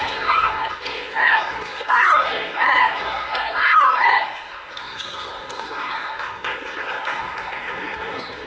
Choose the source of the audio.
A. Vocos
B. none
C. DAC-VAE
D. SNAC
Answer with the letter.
D